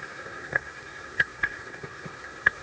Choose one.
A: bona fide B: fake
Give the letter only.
B